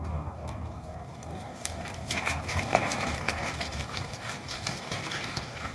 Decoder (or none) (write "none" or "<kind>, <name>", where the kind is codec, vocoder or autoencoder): codec, DAC